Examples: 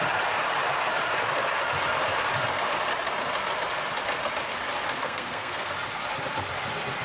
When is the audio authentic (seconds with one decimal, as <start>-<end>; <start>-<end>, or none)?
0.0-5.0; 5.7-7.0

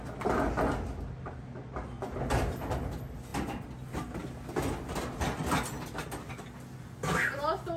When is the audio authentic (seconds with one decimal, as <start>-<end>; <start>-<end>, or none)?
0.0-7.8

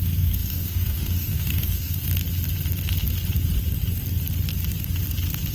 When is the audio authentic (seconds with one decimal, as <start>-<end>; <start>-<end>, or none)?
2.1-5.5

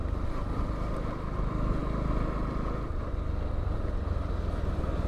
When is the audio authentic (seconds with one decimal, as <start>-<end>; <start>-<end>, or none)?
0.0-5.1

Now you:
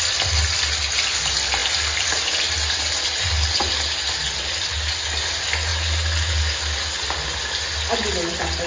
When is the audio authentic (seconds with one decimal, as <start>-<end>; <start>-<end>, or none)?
0.0-8.7

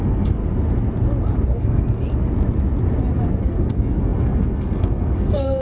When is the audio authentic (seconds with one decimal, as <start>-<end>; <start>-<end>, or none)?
0.4-1.6; 2.0-3.4